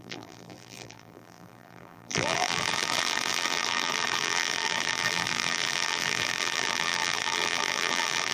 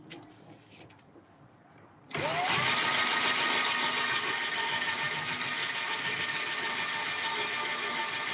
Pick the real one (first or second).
second